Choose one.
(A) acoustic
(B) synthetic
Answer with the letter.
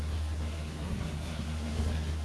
B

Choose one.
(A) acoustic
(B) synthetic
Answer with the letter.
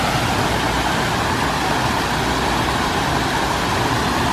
A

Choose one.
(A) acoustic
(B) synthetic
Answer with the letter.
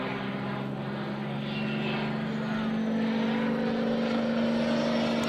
A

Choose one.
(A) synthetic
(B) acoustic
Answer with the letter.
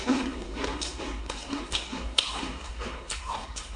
A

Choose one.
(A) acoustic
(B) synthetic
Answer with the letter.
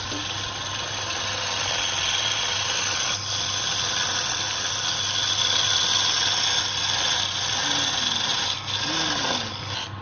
A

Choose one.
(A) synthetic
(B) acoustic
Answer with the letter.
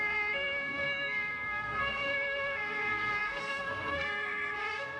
A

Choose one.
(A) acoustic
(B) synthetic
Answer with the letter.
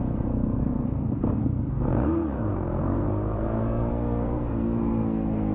B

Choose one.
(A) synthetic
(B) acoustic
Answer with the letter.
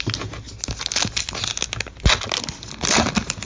B